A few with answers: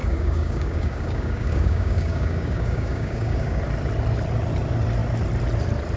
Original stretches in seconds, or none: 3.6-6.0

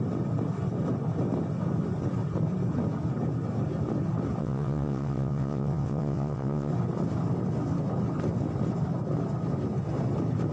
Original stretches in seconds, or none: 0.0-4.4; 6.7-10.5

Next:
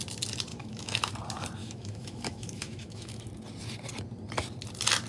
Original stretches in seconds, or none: 0.0-0.5; 1.1-1.6; 3.2-5.1

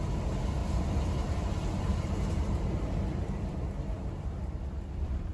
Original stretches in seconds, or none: 0.0-0.6; 1.2-1.9

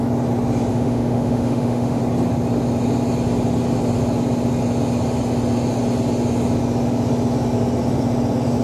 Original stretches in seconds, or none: 0.0-0.7; 2.0-8.6

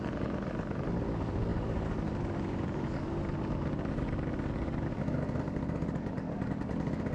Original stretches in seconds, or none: none

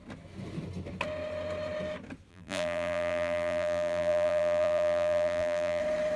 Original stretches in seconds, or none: 0.0-2.3; 5.8-6.2

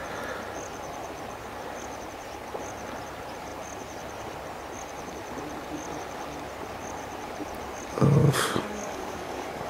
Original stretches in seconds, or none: 0.0-8.2